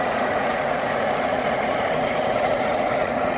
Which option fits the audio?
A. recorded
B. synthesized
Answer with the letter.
B